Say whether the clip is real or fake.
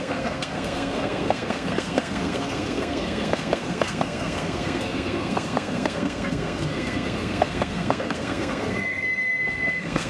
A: fake